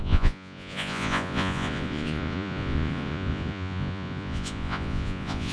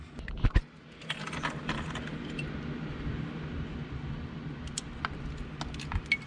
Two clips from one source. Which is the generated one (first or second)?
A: first